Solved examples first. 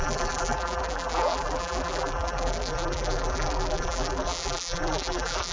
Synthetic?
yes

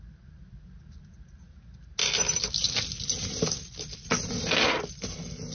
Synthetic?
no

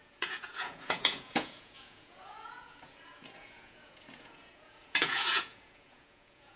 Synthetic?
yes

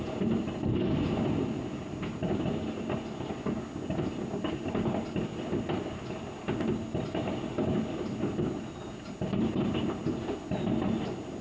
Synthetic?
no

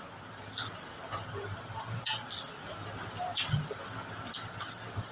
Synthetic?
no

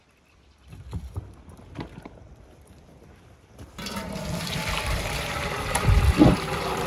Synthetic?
yes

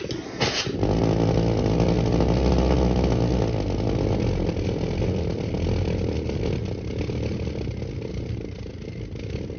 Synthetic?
no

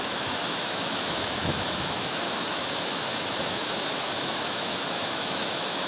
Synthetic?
yes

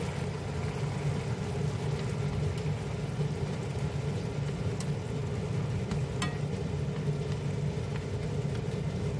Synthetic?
no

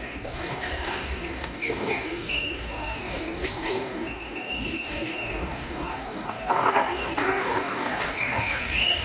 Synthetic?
yes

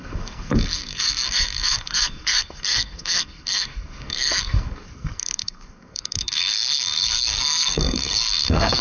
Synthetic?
yes